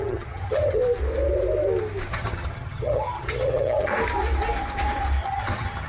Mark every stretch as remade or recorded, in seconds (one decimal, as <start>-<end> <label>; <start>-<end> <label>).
0.0-0.8 remade; 0.8-2.1 recorded; 2.1-3.9 remade; 3.9-5.2 recorded; 5.2-5.9 remade